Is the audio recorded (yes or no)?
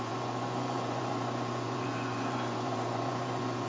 no